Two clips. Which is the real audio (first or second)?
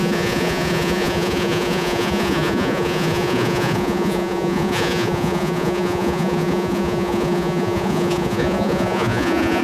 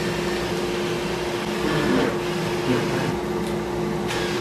second